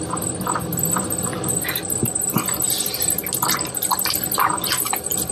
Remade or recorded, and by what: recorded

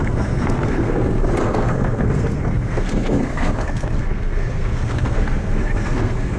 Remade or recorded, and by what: remade, codec, SNAC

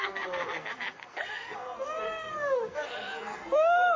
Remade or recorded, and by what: remade, codec, SNAC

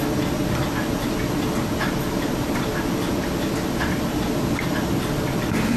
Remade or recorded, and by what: recorded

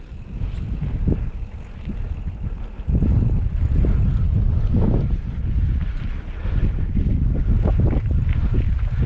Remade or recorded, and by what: recorded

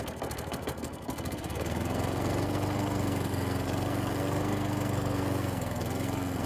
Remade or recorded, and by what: remade, codec, SNAC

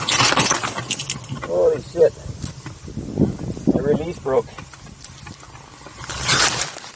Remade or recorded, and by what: recorded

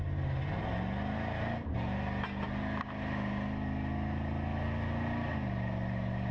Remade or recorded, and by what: recorded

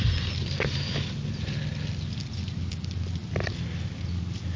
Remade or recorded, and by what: recorded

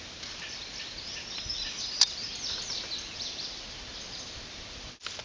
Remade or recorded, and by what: recorded